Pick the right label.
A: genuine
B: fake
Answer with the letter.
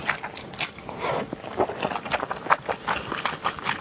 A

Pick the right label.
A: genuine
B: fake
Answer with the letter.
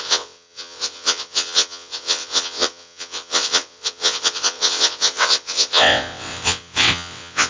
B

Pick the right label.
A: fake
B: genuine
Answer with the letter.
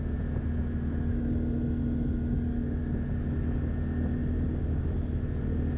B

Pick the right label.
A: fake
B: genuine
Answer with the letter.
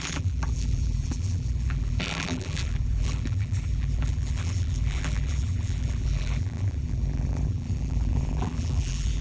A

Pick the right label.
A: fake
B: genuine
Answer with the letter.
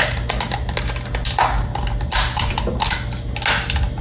B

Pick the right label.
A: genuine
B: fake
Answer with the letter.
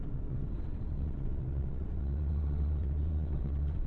B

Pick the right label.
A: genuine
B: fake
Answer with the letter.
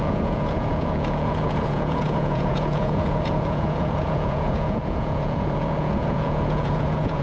B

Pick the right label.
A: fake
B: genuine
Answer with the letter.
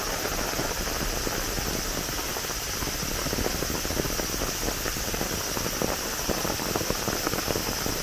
B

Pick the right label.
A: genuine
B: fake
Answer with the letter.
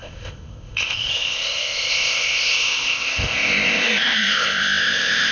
B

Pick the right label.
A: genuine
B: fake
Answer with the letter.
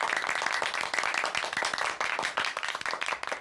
A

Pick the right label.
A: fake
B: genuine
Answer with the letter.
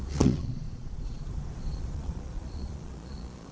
A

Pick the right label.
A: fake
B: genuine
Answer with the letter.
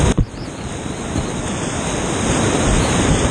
B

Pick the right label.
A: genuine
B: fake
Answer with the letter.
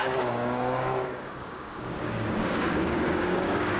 B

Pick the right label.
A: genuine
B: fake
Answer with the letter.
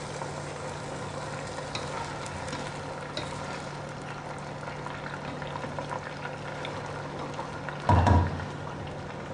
A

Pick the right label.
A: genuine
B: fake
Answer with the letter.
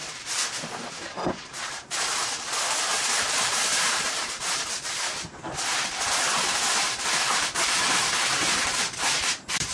B